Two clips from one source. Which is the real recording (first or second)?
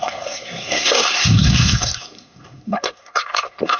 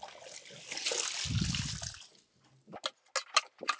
second